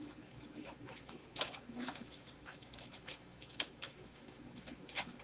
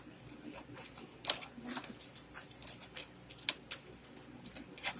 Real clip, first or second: second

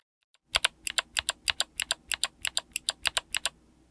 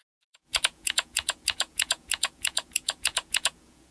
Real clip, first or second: first